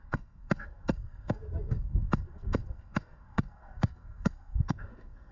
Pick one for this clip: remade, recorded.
remade